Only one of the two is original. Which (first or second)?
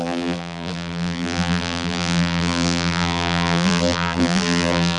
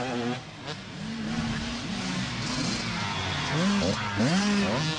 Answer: second